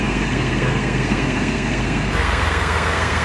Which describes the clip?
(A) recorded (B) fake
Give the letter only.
B